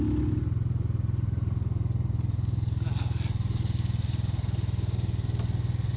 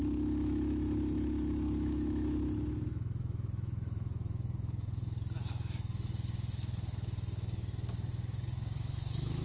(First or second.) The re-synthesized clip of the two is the second